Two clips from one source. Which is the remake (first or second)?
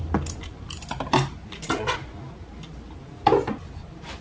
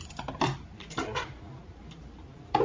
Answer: second